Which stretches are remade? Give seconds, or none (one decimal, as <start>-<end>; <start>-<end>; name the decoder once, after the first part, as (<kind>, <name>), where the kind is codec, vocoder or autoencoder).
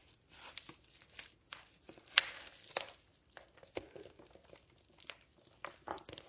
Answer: none